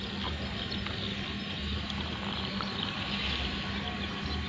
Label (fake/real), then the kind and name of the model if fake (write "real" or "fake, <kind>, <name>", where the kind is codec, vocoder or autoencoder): real